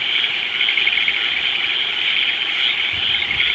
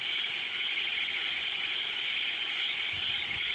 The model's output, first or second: second